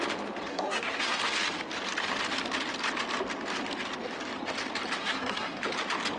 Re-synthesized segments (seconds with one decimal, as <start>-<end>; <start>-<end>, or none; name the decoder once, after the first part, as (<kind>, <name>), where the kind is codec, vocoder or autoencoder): 0.5-1.2 (codec, SNAC); 5.0-5.6